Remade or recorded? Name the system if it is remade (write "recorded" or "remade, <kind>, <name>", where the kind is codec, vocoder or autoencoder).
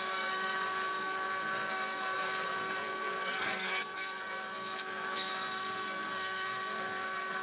remade, codec, SNAC